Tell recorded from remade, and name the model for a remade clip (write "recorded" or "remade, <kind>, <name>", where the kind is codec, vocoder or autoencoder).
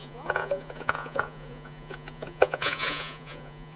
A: remade, vocoder, Vocos